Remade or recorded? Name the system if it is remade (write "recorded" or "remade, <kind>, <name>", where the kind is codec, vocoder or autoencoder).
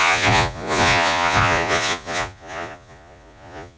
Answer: remade, vocoder, Vocos